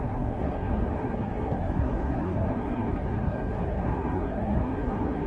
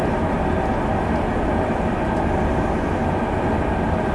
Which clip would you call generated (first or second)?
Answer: first